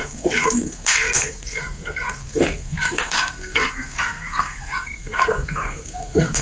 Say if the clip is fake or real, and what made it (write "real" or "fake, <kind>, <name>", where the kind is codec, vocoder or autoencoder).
fake, codec, SNAC